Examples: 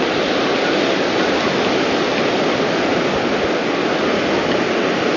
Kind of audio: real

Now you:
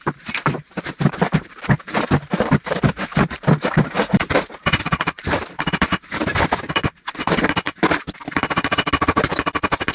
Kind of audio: fake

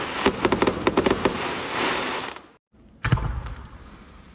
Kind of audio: fake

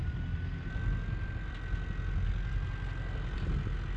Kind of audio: real